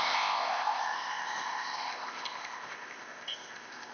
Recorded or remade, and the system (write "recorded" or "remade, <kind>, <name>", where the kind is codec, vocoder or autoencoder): remade, codec, ZipCodec